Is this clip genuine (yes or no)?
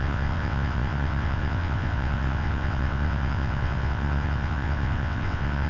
no